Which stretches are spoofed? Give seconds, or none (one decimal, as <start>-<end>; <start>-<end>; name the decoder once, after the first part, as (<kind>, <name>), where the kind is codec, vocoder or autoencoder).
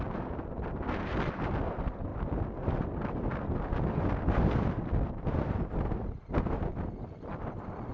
none